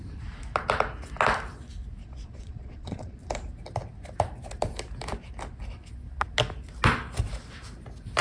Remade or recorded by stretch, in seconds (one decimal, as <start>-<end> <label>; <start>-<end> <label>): 0.0-2.0 recorded; 2.0-3.2 remade; 3.2-8.2 recorded